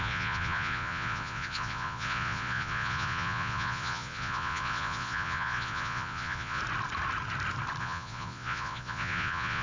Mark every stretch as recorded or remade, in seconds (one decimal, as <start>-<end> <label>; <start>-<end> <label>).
0.0-6.6 remade; 6.6-7.8 recorded; 7.8-9.6 remade